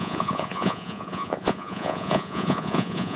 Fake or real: fake